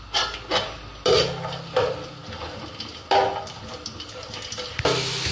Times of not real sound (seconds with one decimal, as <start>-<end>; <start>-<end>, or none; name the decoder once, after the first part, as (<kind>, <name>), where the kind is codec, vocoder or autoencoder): none